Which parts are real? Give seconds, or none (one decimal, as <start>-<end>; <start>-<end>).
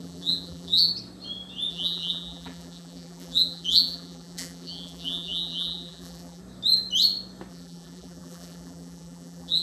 0.9-1.7; 6.4-7.5